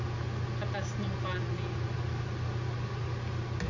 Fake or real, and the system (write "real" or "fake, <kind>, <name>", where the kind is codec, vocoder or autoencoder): real